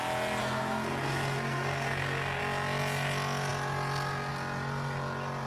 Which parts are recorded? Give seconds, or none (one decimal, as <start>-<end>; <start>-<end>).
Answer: 0.0-0.4; 2.4-5.5